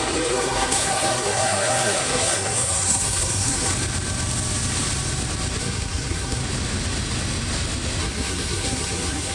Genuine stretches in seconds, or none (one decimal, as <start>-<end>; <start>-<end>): 3.7-5.6; 6.4-8.0

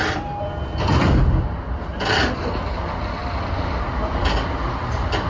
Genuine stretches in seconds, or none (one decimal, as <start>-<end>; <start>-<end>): 0.0-5.3

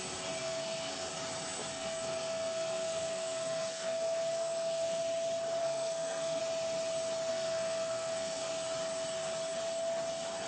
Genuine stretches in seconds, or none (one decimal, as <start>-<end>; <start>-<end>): 0.0-0.4; 1.1-1.7; 5.0-5.6; 6.4-7.3; 8.5-10.5